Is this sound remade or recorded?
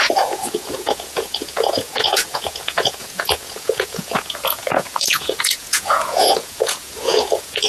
remade